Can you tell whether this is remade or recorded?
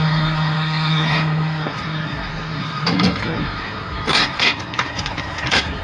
remade